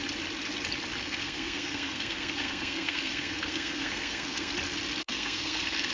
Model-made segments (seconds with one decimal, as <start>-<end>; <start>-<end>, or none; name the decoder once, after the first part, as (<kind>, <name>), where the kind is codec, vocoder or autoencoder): 1.0-4.5 (codec, SNAC); 5.0-5.9